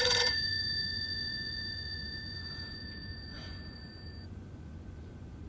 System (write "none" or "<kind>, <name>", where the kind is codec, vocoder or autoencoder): vocoder, Vocos